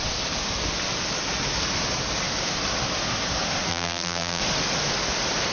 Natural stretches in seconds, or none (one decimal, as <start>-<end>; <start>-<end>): 0.0-3.7; 4.4-5.5